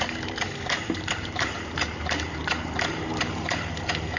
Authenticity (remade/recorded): remade